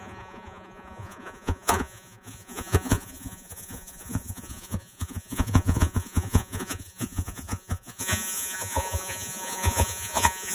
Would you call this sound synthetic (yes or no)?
yes